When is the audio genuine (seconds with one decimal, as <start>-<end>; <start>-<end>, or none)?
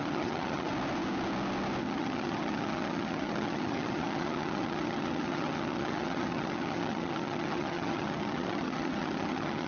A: 0.7-1.8